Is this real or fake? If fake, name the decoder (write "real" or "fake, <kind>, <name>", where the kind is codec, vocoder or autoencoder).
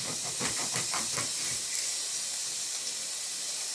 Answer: real